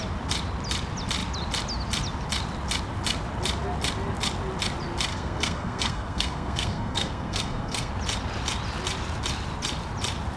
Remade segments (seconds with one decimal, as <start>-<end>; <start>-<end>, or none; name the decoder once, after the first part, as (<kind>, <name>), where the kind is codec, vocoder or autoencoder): 5.1-7.9 (codec, SNAC)